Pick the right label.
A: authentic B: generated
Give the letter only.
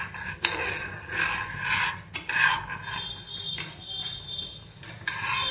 A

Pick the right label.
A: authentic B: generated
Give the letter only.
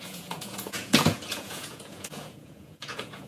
B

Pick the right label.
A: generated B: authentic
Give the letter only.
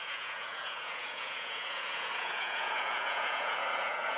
A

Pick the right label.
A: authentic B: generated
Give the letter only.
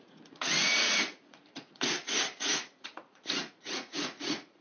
B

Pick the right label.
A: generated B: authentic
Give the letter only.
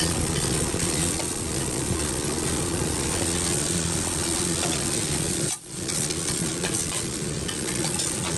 A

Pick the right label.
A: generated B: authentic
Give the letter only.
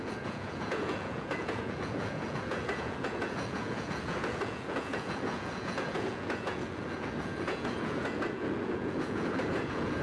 A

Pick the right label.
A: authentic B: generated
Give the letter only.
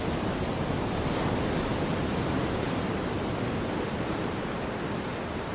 A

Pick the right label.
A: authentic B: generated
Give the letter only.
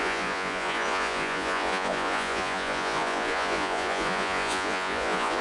B